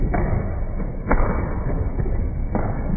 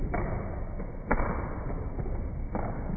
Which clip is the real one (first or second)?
second